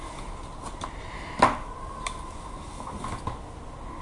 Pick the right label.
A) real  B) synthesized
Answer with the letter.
A